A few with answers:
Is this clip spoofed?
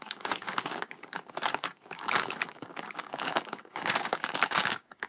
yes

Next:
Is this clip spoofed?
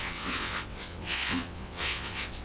yes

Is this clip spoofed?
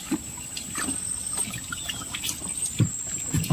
no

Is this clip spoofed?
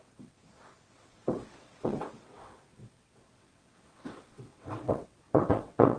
yes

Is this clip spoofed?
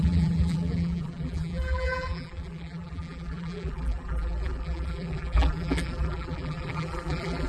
yes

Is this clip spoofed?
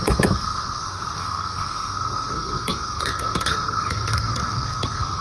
yes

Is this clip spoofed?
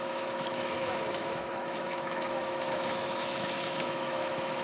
yes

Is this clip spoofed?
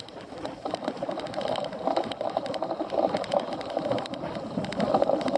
no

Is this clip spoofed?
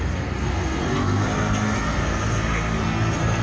yes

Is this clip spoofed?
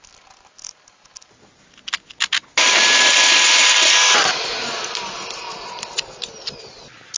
no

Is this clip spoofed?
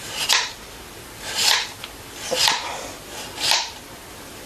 no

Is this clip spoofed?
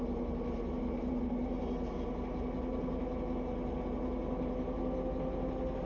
no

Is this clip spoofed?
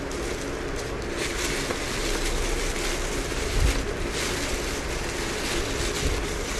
no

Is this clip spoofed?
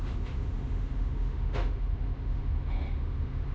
yes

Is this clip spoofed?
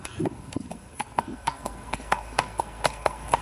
yes